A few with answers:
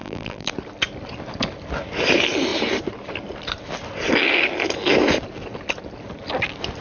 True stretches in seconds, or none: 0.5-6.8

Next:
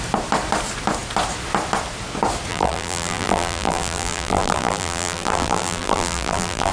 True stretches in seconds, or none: 0.0-2.5

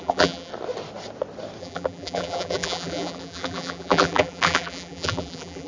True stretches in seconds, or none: 0.5-1.6